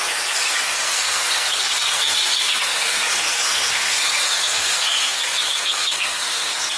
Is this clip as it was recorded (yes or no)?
no